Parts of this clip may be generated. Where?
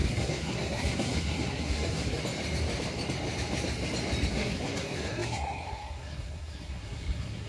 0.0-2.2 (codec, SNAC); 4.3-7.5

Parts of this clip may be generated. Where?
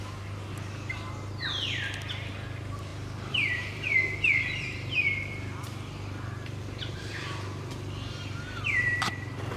2.9-7.1 (vocoder, BigVGAN v2)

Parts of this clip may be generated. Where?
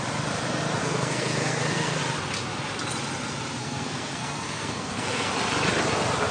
0.8-2.0 (codec, SNAC); 3.6-5.3